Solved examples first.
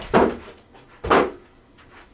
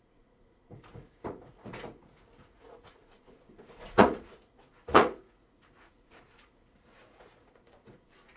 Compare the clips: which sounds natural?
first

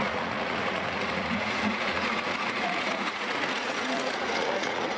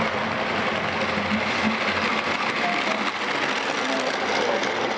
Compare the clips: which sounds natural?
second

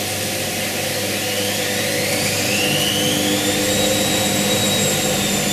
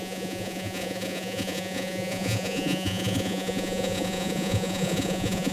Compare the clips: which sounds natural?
first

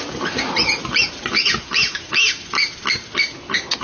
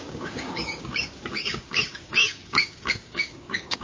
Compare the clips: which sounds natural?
first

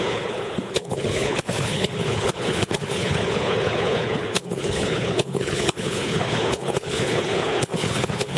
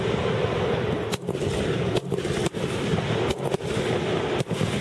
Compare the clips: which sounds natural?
second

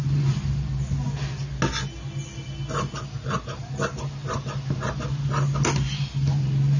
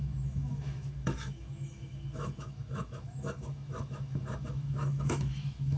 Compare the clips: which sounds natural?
first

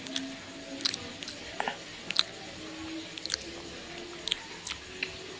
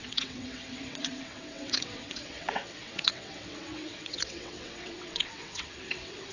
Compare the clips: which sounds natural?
first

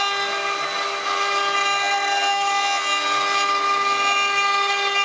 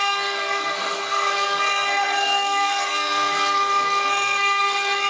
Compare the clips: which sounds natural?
first